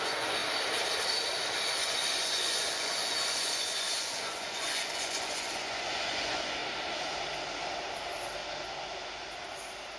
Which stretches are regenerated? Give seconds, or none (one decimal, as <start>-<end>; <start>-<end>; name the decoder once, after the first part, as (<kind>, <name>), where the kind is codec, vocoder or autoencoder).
0.0-0.4 (vocoder, Vocos); 1.8-6.6